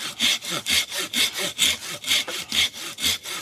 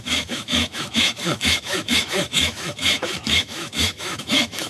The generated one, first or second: second